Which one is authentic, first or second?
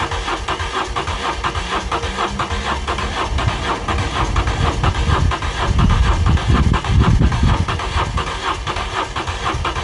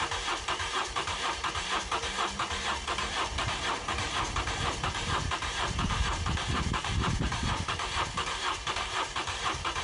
first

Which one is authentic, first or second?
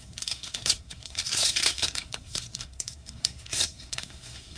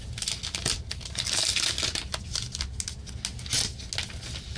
second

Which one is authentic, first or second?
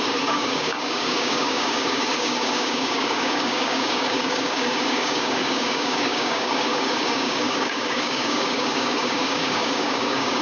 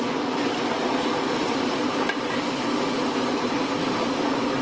second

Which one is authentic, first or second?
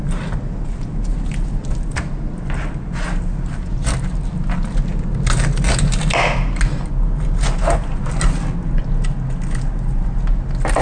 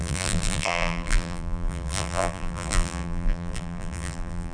first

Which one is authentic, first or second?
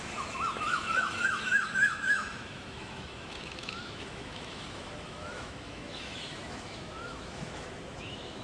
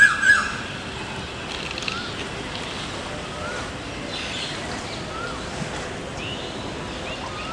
second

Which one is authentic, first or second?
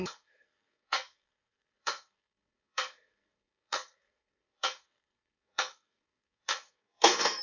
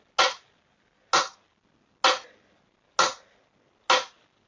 second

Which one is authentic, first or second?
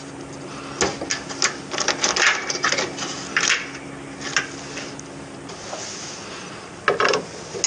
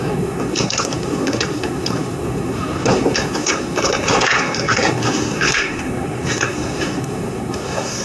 first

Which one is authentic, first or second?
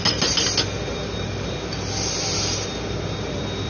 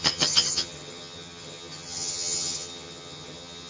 first